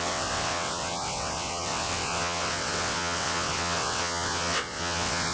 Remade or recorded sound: remade